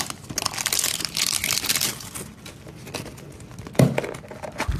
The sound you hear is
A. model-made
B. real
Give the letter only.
B